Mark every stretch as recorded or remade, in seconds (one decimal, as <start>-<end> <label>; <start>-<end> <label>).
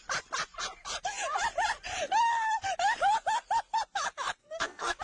0.0-4.4 recorded; 4.4-5.0 remade